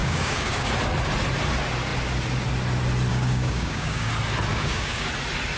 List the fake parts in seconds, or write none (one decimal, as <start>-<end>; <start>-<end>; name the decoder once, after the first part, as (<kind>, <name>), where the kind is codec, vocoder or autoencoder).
0.0-0.7 (codec, DAC); 3.1-4.1; 4.5-5.1